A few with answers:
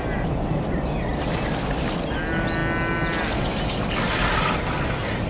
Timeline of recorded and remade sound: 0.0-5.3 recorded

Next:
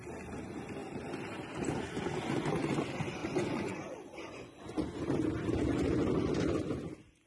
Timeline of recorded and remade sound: 0.0-3.2 recorded; 3.2-4.6 remade; 4.6-5.7 recorded; 5.7-6.3 remade; 6.3-7.3 recorded

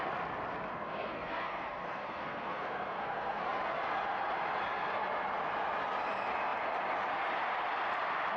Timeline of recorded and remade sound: 0.0-0.7 recorded; 0.7-3.4 remade; 3.4-8.4 recorded